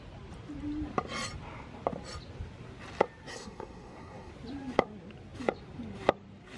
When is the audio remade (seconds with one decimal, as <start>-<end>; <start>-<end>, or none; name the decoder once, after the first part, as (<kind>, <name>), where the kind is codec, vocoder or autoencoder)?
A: 3.3-4.3 (codec, SNAC)